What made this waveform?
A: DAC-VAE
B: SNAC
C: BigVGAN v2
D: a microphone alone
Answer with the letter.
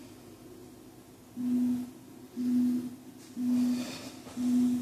D